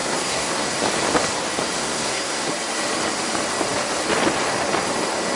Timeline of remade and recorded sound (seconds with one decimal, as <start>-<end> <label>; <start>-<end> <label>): 0.0-0.7 remade; 0.7-1.8 recorded; 1.8-2.5 remade; 2.5-5.4 recorded